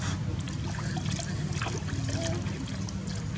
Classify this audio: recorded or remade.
recorded